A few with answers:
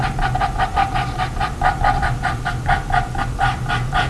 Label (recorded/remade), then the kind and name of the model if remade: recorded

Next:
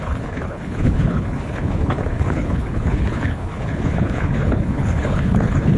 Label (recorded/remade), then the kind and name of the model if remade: remade, codec, HILCodec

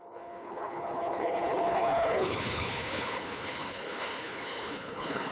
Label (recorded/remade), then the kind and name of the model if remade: remade, codec, HILCodec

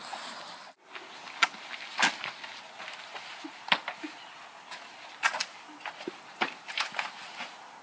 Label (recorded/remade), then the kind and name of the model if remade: recorded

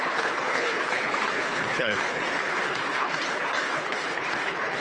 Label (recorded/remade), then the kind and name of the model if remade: remade, codec, HILCodec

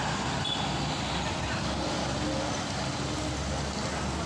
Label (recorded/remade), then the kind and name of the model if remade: recorded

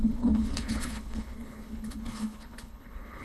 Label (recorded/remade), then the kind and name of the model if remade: remade, codec, HILCodec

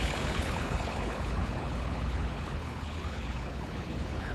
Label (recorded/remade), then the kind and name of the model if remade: remade, codec, HILCodec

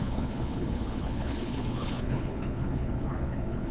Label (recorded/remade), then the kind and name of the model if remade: remade, codec, HILCodec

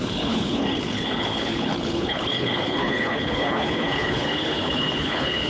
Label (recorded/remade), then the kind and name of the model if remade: remade, codec, HILCodec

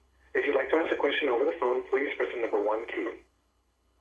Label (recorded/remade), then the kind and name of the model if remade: remade, codec, HILCodec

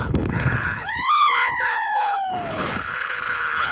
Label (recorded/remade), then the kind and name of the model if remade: remade, codec, HILCodec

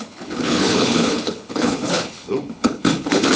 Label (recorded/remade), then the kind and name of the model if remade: remade, codec, HILCodec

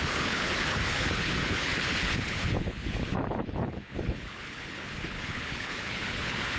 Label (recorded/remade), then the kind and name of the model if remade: remade, codec, HILCodec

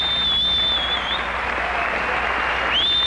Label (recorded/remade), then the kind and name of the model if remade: recorded